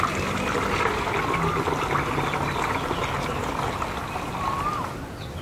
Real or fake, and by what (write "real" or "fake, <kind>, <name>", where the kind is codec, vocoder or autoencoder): real